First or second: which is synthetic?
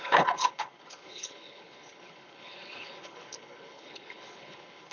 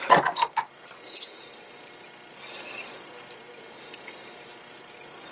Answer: first